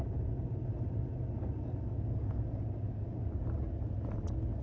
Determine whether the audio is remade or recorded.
recorded